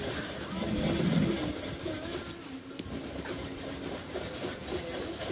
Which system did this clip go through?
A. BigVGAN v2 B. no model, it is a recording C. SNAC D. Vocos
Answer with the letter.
A